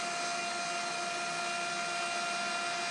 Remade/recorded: recorded